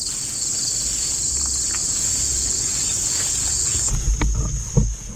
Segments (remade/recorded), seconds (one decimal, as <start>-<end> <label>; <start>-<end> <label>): 0.0-1.8 recorded; 1.8-4.1 remade; 4.1-5.2 recorded